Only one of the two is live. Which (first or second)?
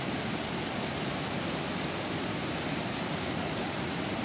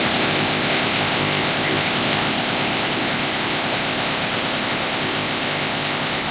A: first